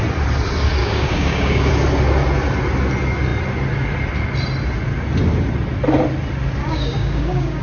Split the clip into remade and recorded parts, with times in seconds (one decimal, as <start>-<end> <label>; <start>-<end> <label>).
0.0-0.8 recorded; 0.8-1.7 remade; 1.7-6.6 recorded; 6.6-7.6 remade